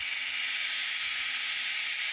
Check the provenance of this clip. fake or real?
fake